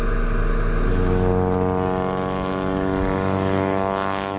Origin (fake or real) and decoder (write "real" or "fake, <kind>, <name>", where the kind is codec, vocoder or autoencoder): real